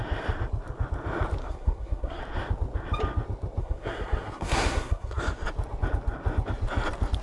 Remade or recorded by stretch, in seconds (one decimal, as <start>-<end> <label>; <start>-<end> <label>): 0.0-1.4 recorded; 1.4-2.2 remade; 2.2-3.6 recorded; 3.6-5.2 remade; 5.2-7.2 recorded